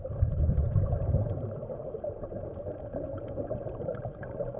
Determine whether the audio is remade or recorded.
recorded